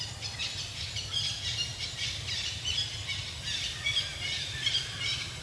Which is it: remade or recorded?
recorded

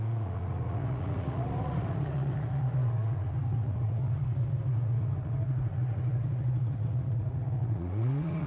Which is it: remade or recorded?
remade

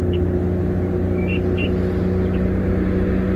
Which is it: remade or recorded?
recorded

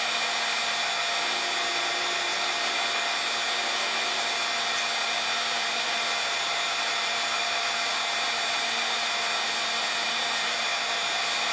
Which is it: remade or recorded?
recorded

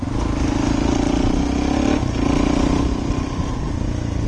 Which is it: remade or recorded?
recorded